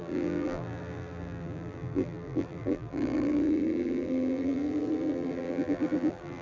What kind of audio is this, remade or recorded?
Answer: remade